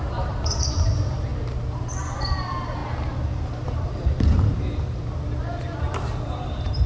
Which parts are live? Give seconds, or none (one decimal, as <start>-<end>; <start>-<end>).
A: 1.3-2.0